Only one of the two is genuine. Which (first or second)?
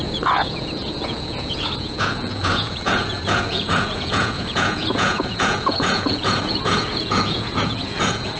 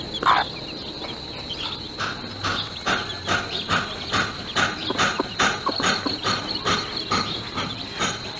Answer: second